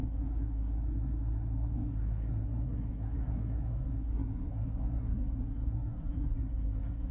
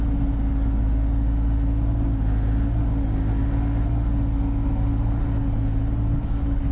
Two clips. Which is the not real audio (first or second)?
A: first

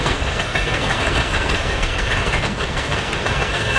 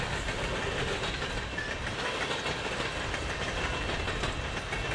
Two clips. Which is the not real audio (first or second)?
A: first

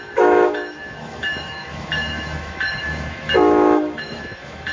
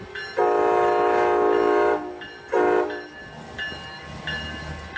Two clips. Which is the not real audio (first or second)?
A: first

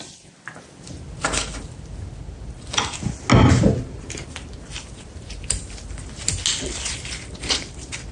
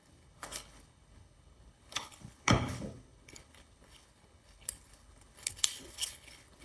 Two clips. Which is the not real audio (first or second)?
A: second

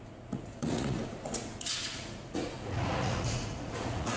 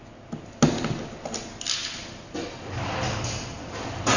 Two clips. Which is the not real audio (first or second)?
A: first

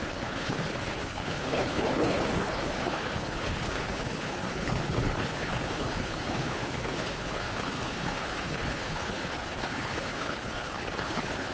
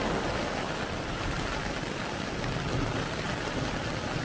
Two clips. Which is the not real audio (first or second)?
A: first